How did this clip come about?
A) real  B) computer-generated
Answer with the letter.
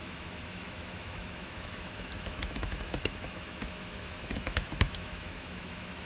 B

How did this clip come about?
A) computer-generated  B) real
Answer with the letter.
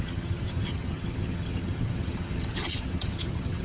A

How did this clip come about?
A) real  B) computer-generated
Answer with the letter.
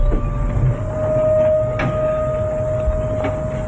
A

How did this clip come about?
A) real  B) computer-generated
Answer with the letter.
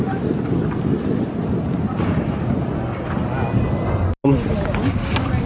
A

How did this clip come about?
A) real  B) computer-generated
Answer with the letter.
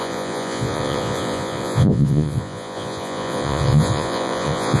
B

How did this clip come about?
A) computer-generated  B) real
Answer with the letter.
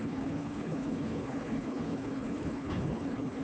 A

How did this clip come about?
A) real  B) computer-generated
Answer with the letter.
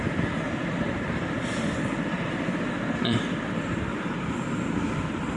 B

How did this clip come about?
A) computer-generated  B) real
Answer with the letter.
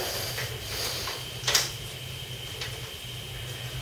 B